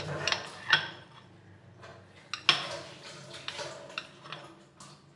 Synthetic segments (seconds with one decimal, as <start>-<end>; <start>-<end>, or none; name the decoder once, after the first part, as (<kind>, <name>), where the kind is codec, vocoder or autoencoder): none

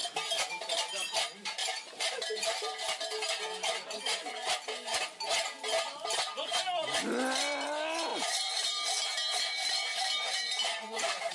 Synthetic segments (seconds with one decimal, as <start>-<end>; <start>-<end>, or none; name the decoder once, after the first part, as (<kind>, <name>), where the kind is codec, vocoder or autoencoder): 1.6-3.0 (vocoder, BigVGAN v2); 8.1-11.3